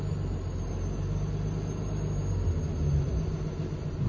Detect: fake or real real